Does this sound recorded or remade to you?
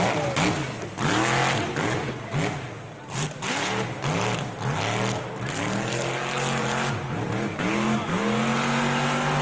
recorded